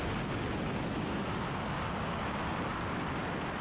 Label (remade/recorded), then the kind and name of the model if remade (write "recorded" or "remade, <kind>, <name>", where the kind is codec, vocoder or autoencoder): recorded